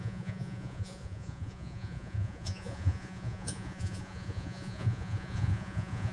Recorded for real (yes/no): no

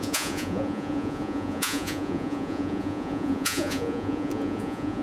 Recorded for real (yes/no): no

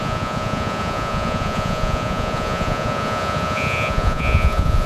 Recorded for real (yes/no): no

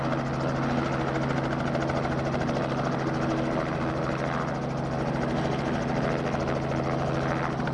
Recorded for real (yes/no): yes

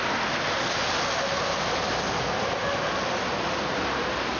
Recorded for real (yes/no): yes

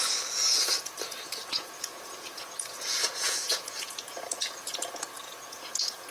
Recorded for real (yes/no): no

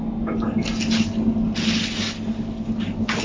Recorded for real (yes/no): yes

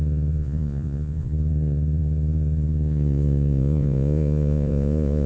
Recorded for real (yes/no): no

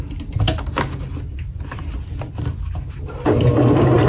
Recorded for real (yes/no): yes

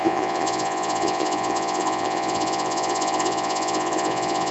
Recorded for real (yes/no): no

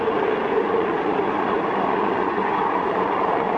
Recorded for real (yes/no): no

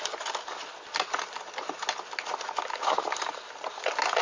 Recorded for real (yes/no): yes